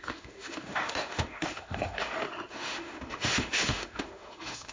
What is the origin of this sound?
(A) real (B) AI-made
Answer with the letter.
B